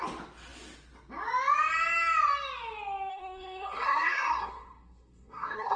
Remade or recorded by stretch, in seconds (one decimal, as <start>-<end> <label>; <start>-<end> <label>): 0.0-3.1 recorded; 3.1-5.8 remade